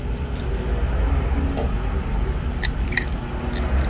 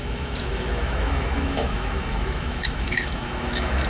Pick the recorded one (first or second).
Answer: first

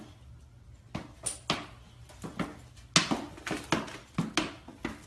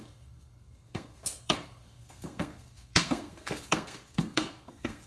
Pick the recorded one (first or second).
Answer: first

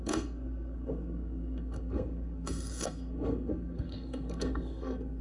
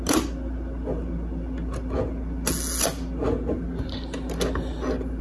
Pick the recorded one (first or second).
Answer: second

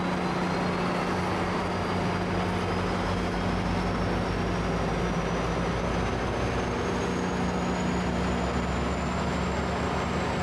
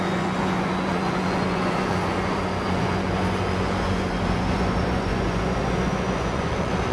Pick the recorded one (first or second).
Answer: first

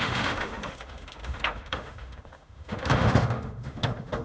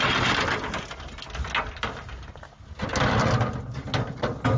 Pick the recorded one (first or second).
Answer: second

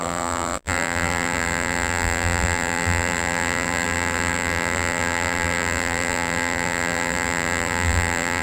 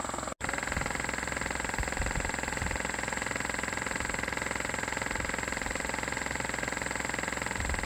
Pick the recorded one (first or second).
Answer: second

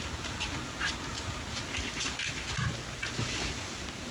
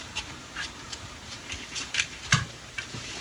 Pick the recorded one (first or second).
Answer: first